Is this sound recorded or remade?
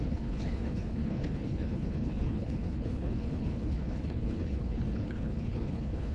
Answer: remade